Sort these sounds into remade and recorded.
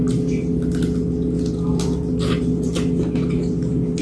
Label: recorded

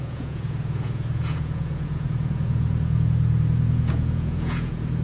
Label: remade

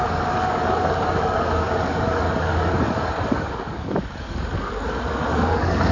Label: remade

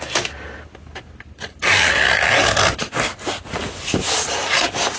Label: recorded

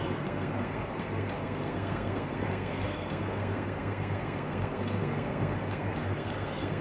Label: remade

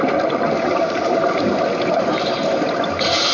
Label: recorded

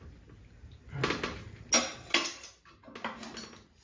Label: recorded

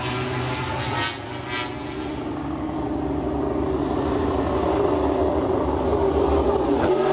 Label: recorded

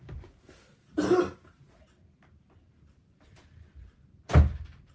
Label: recorded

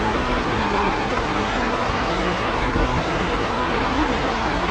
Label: remade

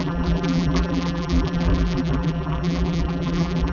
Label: remade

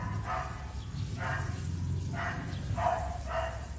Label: recorded